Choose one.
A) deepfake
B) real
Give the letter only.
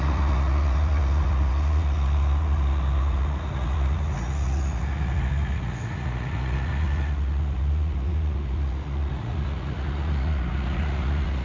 A